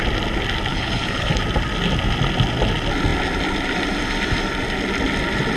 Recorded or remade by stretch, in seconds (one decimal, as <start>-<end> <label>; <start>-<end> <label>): 0.0-0.7 recorded; 0.7-1.3 remade; 1.3-5.6 recorded